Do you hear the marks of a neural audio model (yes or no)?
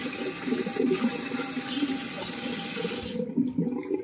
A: no